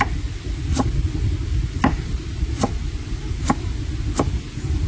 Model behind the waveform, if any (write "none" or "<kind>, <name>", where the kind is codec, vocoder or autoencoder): none